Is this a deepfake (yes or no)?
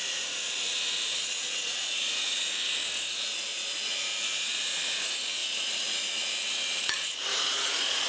yes